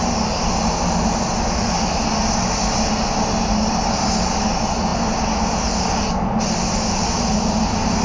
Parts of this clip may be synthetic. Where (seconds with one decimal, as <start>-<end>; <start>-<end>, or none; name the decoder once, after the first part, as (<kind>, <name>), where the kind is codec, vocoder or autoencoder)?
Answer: none